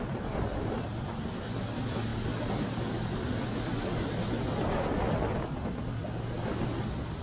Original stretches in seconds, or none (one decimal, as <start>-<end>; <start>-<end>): 0.0-7.2